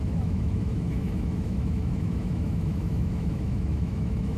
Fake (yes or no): yes